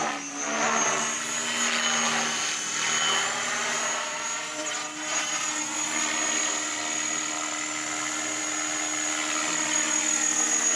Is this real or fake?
real